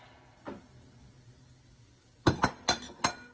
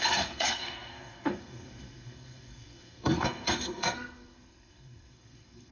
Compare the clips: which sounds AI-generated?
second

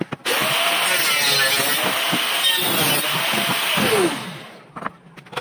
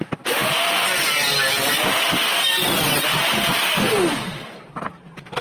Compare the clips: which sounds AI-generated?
second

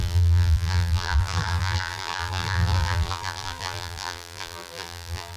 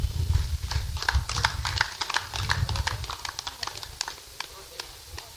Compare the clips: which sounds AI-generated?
first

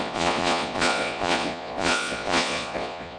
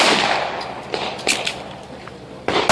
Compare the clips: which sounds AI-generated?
first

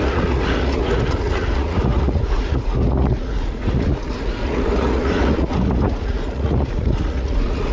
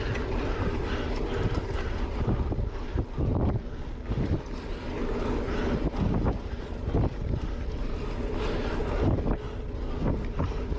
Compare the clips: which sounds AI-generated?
first